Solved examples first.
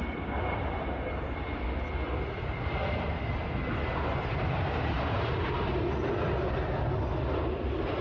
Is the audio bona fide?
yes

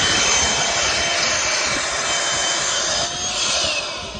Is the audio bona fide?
yes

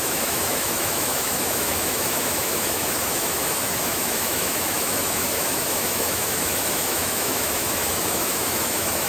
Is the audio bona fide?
no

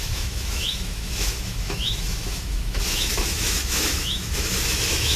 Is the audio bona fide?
no